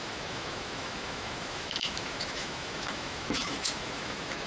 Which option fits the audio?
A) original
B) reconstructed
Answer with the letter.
B